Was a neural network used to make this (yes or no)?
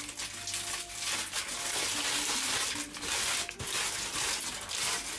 no